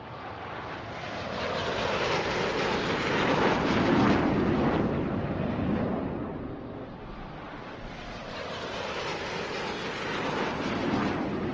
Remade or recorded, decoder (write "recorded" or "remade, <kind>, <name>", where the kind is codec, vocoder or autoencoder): recorded